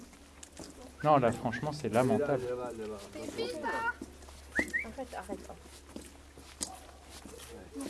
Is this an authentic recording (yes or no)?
yes